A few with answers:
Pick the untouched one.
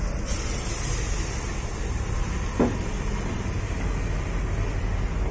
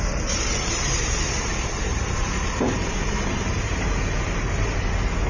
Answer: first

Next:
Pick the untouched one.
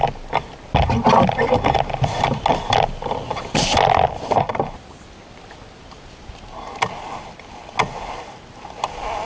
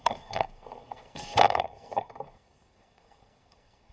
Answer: first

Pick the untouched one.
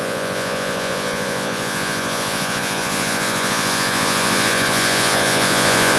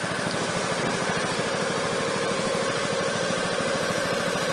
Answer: second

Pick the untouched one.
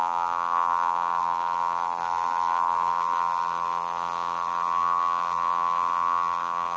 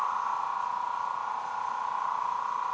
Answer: second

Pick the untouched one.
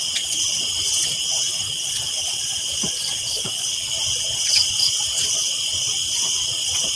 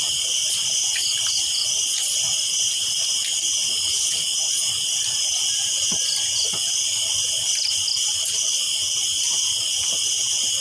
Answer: second